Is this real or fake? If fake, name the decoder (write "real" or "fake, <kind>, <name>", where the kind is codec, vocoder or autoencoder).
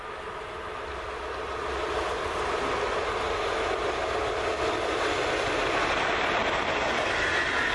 real